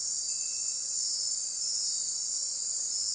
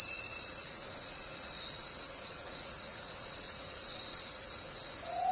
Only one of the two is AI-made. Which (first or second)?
second